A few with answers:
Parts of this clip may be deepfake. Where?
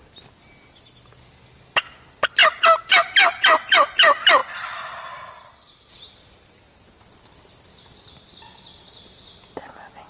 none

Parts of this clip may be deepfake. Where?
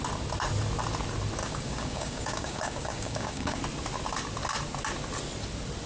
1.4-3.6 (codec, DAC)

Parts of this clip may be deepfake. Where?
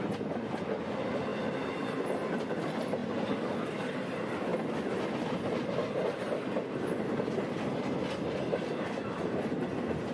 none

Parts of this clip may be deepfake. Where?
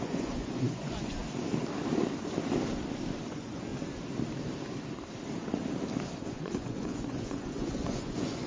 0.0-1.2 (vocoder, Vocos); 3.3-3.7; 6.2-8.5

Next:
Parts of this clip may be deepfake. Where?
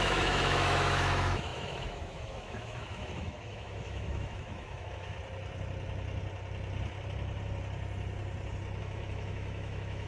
0.0-5.2 (autoencoder, DAC-VAE); 8.8-10.1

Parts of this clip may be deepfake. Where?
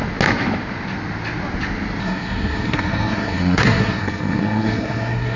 2.0-5.4 (codec, SNAC)